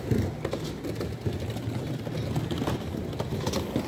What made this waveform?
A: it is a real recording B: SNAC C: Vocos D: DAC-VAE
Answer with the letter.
A